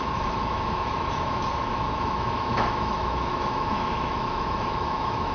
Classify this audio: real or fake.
fake